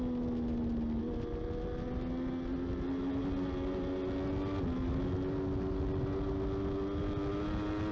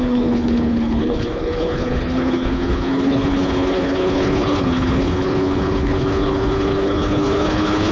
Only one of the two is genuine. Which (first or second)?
first